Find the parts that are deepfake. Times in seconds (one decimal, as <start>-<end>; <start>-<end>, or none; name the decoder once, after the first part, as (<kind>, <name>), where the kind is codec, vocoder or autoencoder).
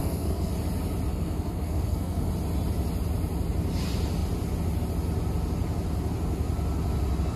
0.0-0.5 (codec, SNAC); 1.1-2.3